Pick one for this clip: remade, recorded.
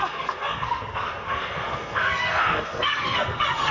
remade